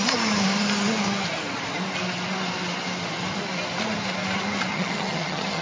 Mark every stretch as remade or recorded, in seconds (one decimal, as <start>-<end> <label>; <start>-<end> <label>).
0.0-4.7 recorded; 4.7-5.6 remade